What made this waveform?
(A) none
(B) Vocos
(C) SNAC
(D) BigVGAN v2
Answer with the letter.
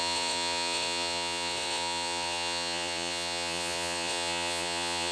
B